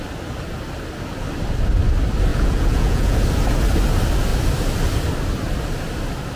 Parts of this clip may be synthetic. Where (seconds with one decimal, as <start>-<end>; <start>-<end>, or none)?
2.3-3.2